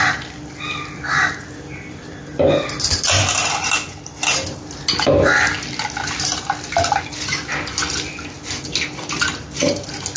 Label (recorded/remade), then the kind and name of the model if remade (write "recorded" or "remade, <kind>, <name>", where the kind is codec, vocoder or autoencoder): recorded